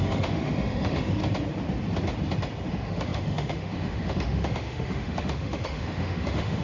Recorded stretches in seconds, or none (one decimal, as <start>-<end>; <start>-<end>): 1.2-2.7